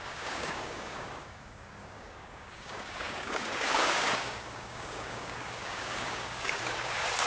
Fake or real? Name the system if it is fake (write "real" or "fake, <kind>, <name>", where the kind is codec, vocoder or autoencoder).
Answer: fake, codec, DAC